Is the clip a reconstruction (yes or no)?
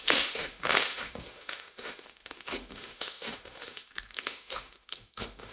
yes